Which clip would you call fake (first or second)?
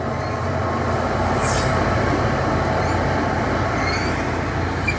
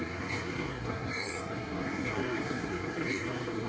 second